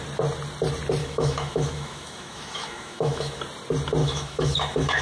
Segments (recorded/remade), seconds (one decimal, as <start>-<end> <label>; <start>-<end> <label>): 0.0-1.0 recorded; 1.0-3.4 remade; 3.4-4.0 recorded; 4.0-5.0 remade